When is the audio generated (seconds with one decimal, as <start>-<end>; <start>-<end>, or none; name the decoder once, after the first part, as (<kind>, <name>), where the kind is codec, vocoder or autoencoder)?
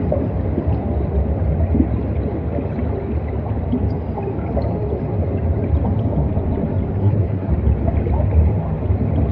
7.0-7.5 (codec, SNAC)